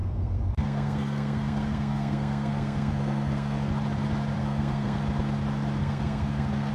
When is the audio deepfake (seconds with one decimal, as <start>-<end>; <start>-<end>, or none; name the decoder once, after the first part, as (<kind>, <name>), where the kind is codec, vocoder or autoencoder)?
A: 0.0-3.7 (codec, SNAC); 4.4-5.0; 5.8-6.7